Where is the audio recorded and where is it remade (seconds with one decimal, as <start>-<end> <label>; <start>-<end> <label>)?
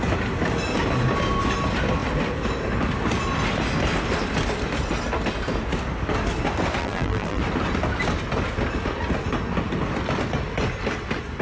0.0-6.8 recorded; 6.8-7.4 remade; 7.4-11.4 recorded